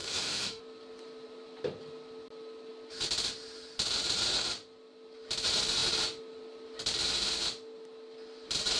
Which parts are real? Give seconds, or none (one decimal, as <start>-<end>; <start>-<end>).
0.6-8.8